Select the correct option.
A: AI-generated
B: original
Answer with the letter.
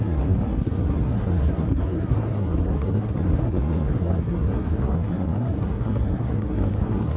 A